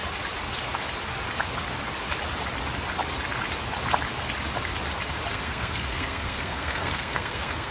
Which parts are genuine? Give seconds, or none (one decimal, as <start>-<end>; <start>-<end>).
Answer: 0.0-5.3